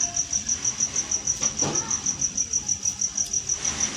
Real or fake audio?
real